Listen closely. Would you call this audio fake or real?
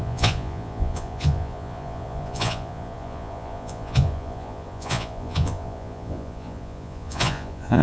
fake